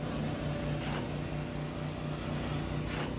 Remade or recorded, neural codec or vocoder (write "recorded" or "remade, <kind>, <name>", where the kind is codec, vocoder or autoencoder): recorded